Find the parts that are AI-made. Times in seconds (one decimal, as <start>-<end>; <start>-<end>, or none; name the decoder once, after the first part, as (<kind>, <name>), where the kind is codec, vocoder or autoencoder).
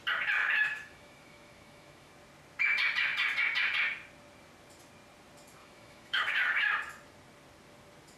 0.4-2.1 (autoencoder, DAC-VAE); 5.6-6.6